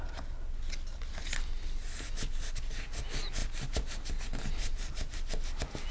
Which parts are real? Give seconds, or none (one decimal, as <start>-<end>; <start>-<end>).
0.0-5.9